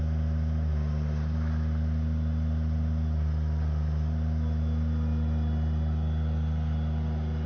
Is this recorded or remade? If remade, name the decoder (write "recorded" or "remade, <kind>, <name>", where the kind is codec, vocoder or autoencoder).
recorded